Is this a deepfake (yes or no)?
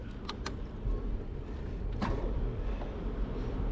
no